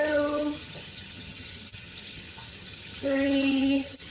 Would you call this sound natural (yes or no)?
no